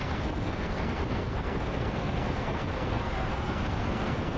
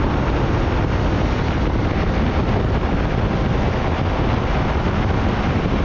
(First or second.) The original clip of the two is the second